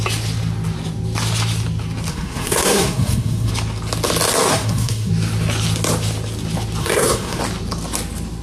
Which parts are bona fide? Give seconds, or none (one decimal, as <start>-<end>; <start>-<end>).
0.0-2.1; 3.5-4.5; 5.1-6.8; 7.4-8.4